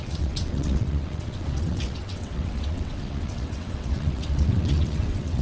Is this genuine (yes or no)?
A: no